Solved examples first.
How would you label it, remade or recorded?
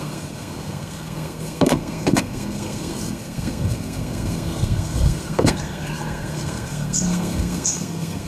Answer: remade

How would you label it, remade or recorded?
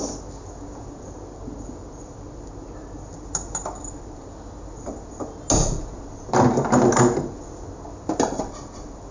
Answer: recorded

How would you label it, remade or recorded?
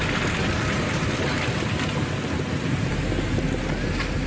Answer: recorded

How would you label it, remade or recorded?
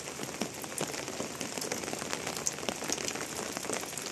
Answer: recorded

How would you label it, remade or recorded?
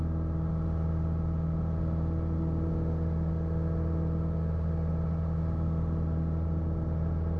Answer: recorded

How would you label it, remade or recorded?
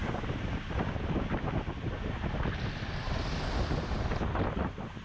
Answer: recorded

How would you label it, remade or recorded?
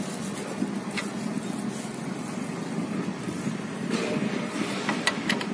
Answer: recorded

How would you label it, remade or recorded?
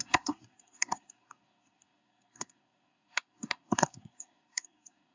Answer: remade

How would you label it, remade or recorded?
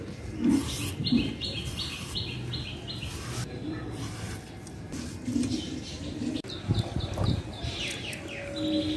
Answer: recorded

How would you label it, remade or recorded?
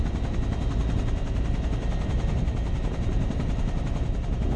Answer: recorded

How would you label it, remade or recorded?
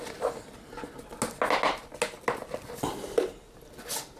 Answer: recorded